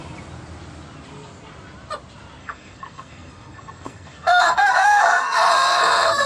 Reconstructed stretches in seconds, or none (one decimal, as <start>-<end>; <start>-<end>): 2.4-6.3